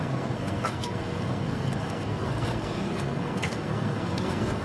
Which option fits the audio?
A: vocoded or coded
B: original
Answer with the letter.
A